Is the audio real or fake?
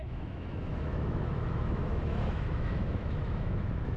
fake